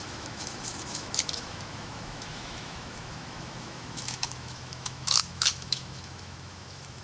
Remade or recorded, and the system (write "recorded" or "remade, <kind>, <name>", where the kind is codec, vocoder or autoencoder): remade, autoencoder, DAC-VAE